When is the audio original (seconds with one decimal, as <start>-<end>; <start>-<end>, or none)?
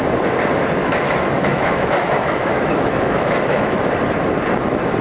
0.0-0.8; 3.8-5.0